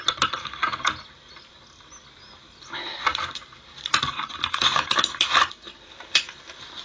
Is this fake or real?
real